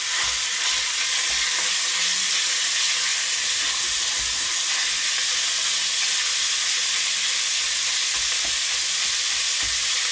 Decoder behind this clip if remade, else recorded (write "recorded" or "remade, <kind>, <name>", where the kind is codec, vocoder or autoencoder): recorded